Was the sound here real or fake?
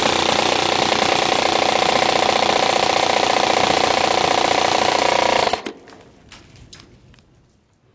real